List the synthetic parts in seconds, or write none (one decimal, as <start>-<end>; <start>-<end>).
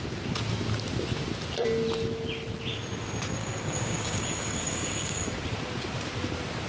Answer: 3.4-5.3